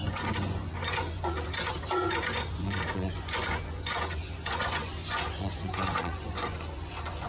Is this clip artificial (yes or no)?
yes